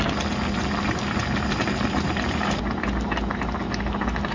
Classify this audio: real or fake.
real